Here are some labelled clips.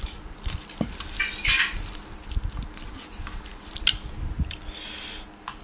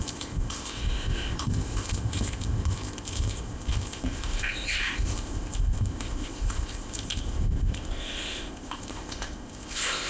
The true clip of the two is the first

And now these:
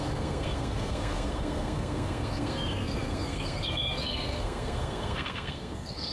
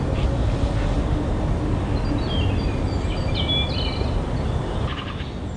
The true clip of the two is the second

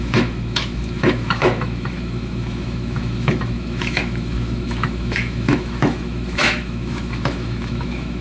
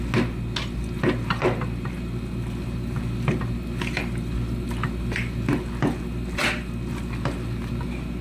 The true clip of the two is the second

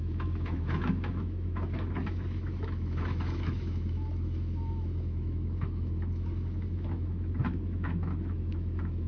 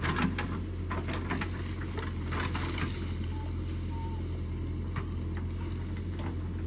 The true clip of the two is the second